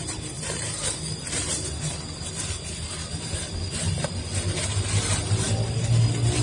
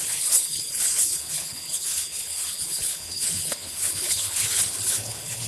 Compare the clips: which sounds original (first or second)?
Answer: first